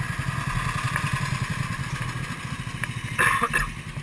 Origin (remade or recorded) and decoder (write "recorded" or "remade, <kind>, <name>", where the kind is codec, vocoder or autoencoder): recorded